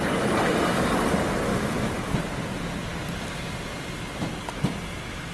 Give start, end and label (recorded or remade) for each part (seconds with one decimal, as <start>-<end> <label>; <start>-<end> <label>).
0.0-1.5 recorded; 1.5-2.1 remade; 2.1-5.3 recorded